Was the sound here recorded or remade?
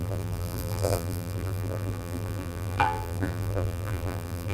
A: remade